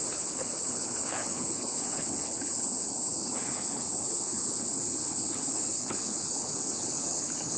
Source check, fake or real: fake